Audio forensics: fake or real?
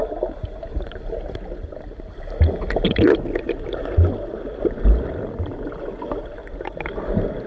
real